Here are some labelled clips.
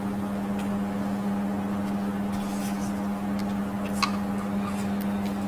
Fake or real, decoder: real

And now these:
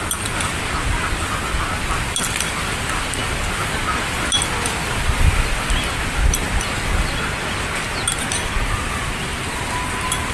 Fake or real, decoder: real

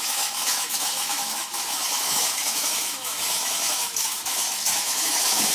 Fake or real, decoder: fake, autoencoder, DAC-VAE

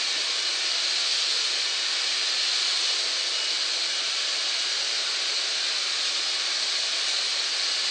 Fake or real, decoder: real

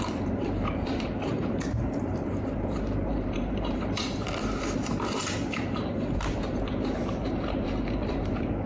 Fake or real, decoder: fake, vocoder, BigVGAN v2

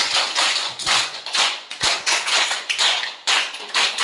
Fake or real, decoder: fake, vocoder, Vocos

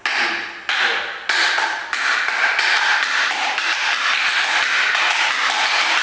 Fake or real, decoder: real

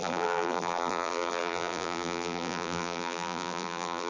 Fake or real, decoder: fake, vocoder, BigVGAN v2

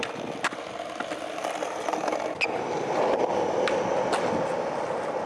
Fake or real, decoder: real